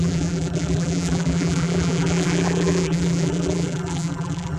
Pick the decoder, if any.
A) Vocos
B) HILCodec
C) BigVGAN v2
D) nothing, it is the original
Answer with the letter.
C